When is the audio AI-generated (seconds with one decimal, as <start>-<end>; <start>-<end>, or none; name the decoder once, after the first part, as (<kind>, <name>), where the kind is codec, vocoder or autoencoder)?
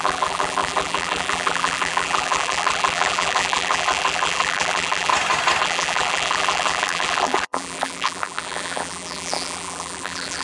0.0-5.1 (vocoder, BigVGAN v2); 5.6-10.4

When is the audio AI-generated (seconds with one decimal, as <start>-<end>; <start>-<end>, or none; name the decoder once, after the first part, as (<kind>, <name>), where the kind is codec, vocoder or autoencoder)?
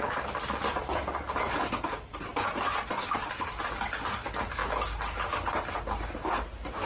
0.0-2.3 (vocoder, BigVGAN v2); 3.5-4.6; 5.3-6.9